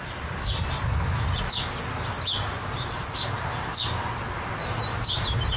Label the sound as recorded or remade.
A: recorded